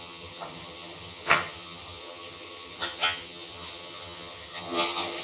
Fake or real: fake